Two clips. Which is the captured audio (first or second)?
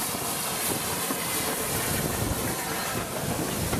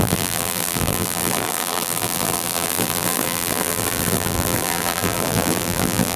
first